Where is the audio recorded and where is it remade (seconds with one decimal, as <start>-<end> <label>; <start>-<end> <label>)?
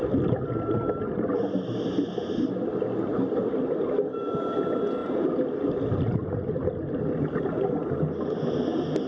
0.0-9.1 recorded